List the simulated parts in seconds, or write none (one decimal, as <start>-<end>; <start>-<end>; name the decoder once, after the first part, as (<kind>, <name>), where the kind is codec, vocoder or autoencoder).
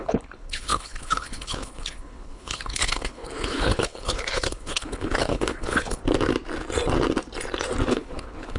0.0-6.0 (codec, HILCodec); 7.9-8.6